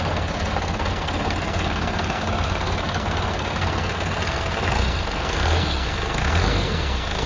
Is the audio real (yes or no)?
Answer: no